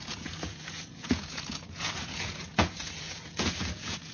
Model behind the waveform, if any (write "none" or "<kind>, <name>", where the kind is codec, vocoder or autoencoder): vocoder, Vocos